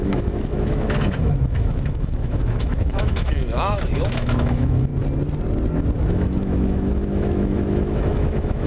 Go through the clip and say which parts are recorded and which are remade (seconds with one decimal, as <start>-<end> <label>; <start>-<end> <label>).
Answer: 0.0-4.9 remade; 4.9-6.1 recorded; 6.1-8.7 remade